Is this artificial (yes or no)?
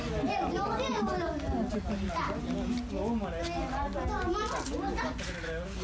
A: no